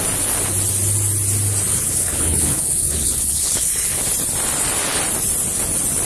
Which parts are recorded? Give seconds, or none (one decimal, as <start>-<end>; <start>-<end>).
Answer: 0.0-1.7; 4.0-6.0